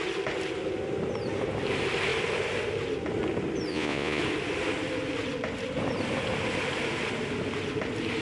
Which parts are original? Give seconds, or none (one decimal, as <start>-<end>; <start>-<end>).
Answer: 0.0-3.7; 4.2-8.2